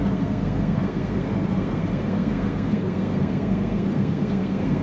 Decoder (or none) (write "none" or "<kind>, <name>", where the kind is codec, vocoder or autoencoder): codec, SNAC